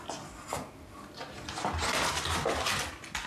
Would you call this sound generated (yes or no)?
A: no